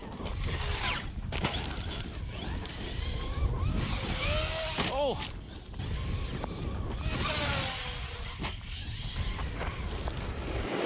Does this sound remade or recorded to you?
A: recorded